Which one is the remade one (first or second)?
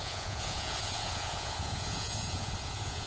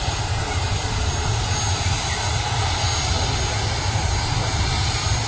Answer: first